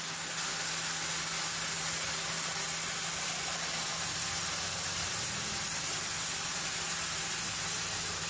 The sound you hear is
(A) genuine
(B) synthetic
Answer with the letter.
A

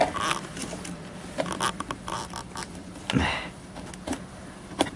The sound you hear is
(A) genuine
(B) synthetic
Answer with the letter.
A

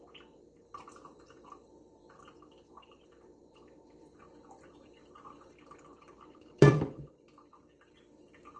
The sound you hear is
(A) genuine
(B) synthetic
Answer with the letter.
B